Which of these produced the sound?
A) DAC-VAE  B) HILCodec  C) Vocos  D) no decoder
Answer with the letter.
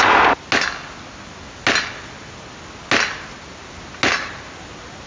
D